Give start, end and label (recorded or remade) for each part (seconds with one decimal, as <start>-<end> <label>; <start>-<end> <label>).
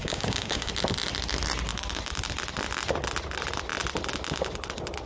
0.0-0.7 remade; 0.7-5.1 recorded